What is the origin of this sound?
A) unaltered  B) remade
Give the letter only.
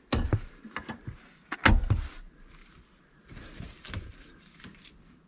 A